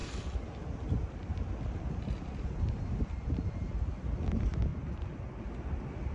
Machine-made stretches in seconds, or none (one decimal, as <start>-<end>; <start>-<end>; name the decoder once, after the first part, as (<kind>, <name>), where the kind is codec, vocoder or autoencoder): none